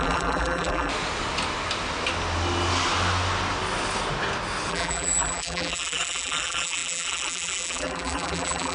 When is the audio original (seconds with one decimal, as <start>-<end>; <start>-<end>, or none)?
0.9-4.7